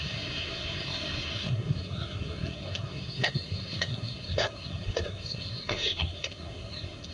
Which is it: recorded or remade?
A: remade